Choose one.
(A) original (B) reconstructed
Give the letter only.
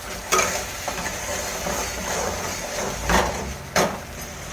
A